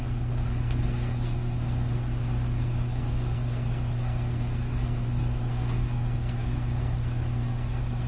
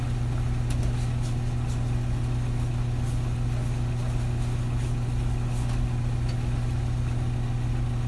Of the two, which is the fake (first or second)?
first